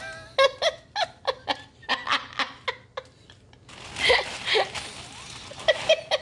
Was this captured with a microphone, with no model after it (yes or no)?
yes